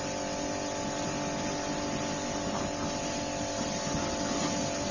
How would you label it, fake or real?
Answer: real